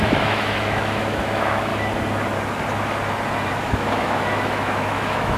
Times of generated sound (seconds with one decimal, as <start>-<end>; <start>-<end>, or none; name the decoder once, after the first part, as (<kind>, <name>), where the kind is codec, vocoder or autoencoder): 0.0-1.7 (autoencoder, DAC-VAE); 3.5-5.4